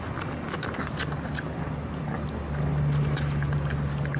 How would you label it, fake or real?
real